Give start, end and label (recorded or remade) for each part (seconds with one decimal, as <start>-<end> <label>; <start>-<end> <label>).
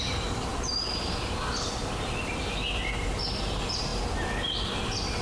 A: 0.0-5.2 recorded